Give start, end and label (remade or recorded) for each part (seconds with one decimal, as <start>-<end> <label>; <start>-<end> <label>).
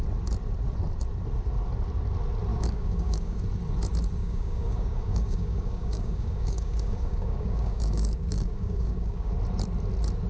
0.0-2.5 recorded; 2.5-3.4 remade; 3.4-4.2 recorded; 4.2-9.3 remade; 9.3-10.3 recorded